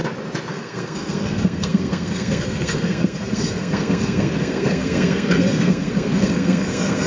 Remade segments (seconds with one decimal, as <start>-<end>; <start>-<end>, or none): 0.5-7.1